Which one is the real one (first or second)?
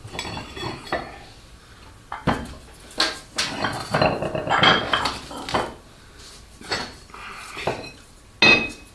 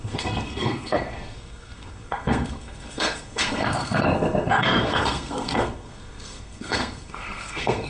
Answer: first